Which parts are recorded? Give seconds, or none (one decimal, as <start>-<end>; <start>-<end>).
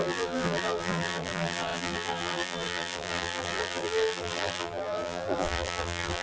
none